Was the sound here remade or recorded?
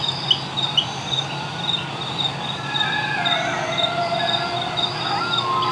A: recorded